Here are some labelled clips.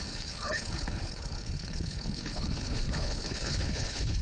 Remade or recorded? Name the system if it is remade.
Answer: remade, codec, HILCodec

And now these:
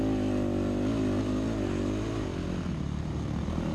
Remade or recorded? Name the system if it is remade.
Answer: recorded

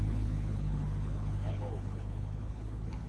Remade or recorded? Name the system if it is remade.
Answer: remade, codec, HILCodec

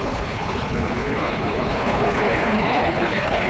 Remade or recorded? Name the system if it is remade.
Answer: remade, codec, HILCodec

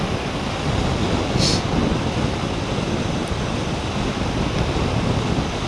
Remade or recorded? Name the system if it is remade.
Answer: recorded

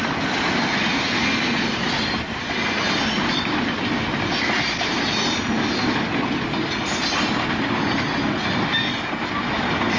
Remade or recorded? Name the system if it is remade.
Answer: recorded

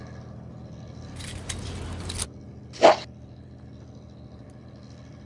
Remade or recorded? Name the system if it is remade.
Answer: recorded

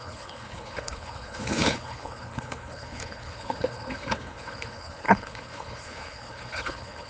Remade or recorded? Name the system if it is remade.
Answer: remade, codec, HILCodec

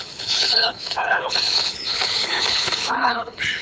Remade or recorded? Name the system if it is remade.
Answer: remade, codec, HILCodec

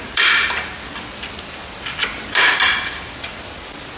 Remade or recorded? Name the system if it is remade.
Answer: recorded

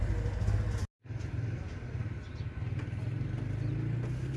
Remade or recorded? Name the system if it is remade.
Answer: recorded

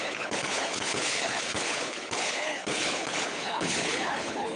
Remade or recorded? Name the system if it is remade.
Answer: remade, codec, HILCodec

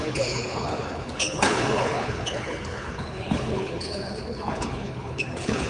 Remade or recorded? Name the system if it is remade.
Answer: remade, codec, HILCodec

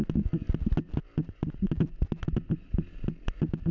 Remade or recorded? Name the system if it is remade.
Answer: recorded